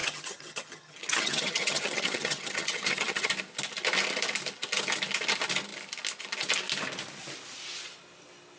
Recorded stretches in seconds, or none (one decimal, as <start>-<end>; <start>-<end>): 3.3-8.6